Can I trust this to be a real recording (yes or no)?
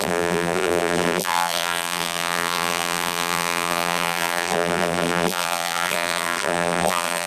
no